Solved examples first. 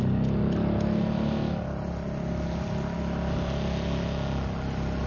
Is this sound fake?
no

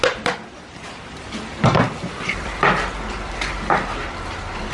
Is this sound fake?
no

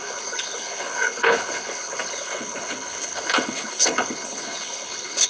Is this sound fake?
yes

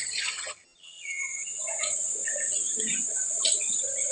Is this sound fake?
yes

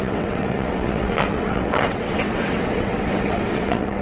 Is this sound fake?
yes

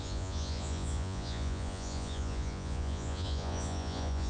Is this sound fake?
yes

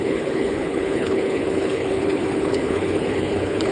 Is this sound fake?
yes